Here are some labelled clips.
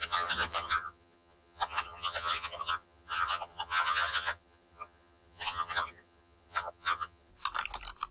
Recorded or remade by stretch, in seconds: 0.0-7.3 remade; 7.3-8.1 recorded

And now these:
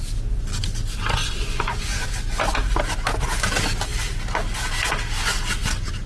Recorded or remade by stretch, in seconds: 0.0-1.2 recorded; 1.2-2.1 remade; 2.1-6.1 recorded

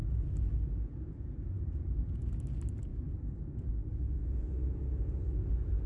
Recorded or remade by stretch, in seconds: 0.0-4.2 recorded; 4.2-5.4 remade; 5.4-5.9 recorded

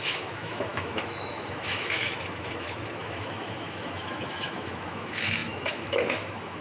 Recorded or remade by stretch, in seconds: 0.0-6.6 remade

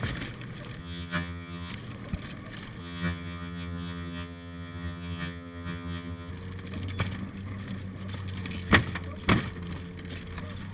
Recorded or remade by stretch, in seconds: 0.0-0.8 recorded; 0.8-1.7 remade; 1.7-2.8 recorded; 2.8-6.3 remade; 6.3-10.7 recorded

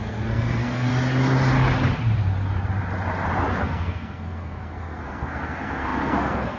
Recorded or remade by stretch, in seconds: 0.0-0.9 remade; 0.9-3.6 recorded; 3.6-6.6 remade

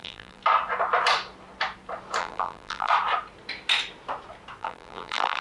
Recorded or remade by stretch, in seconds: 0.0-0.4 remade; 0.4-2.2 recorded; 2.2-2.9 remade; 2.9-4.6 recorded; 4.6-5.4 remade

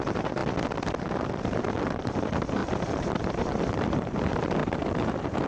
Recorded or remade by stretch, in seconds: 0.0-0.4 remade; 0.4-1.4 recorded; 1.4-5.5 remade